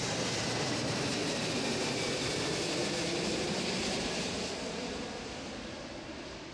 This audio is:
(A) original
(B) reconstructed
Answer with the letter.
B